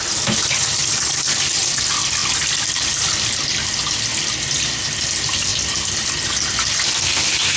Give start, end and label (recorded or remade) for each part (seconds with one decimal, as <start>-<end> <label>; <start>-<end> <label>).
0.0-7.6 recorded